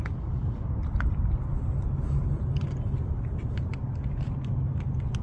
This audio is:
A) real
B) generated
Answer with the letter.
A